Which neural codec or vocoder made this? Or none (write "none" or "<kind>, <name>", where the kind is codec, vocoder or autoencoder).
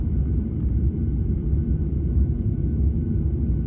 vocoder, BigVGAN v2